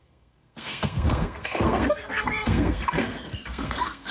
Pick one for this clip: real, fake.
fake